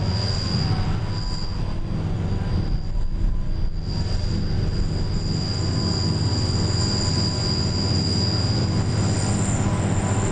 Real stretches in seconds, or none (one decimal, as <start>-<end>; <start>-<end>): 0.0-10.3